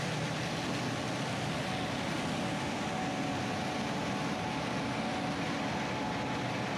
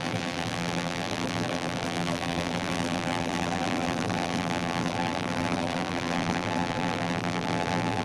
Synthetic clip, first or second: second